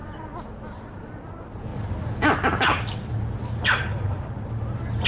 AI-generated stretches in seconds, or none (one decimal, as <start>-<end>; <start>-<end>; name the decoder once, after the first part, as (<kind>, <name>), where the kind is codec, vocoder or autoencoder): none